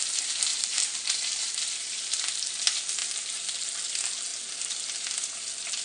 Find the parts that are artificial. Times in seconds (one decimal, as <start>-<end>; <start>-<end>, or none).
0.5-2.5